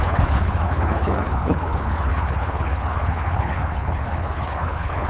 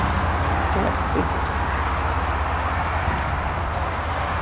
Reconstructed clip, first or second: first